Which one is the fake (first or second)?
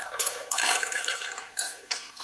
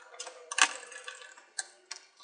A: first